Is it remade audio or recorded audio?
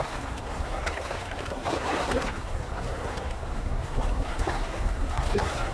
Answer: remade